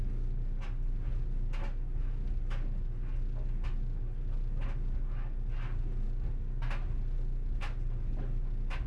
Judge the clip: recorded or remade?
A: recorded